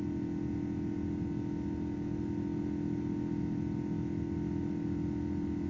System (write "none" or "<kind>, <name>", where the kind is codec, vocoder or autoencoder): none